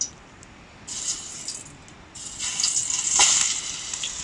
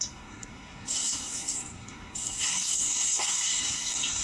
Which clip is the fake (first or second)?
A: second